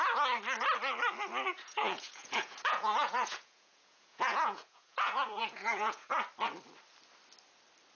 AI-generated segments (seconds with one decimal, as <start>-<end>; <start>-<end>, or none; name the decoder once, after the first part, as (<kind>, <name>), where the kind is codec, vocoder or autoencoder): 1.5-6.2 (vocoder, Vocos)